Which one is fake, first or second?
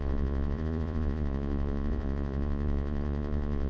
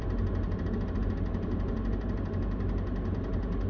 first